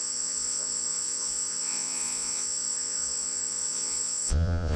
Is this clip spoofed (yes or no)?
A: yes